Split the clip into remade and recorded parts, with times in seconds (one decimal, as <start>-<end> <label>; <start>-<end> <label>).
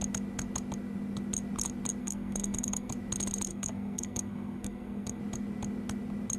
0.0-2.0 recorded; 2.0-2.9 remade; 2.9-3.5 recorded; 3.5-5.2 remade; 5.2-6.4 recorded